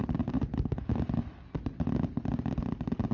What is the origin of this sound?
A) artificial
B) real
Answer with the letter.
B